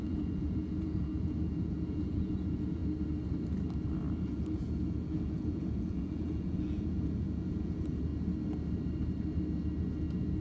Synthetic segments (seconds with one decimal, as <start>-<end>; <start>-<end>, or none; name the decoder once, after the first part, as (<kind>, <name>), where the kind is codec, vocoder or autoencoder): 0.0-2.8 (vocoder, Vocos); 4.2-8.1